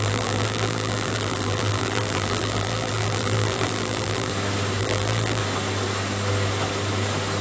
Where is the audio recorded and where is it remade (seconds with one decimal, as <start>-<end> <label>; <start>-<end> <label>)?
0.0-4.3 remade; 4.3-4.8 recorded; 4.8-5.4 remade; 5.4-7.4 recorded